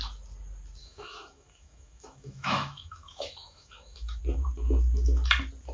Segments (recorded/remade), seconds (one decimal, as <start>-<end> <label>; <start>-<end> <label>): 0.0-0.8 recorded; 0.8-4.2 remade; 4.2-5.7 recorded